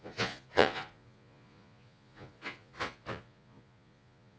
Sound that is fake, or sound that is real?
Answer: fake